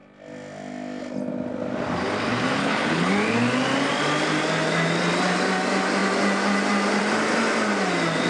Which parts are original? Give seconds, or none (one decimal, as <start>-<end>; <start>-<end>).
0.0-2.6; 3.1-8.3